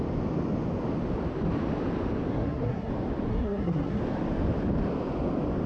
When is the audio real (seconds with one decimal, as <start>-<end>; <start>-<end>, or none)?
0.0-2.3; 2.9-3.3; 4.0-5.7